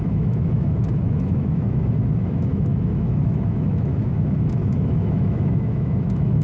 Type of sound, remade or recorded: remade